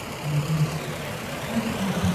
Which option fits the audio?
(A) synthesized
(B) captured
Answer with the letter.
A